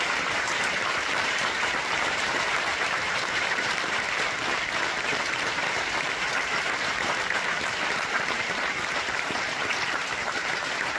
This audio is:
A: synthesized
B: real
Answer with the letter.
A